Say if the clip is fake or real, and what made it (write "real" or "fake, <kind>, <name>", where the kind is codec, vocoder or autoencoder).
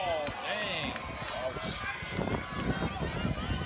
real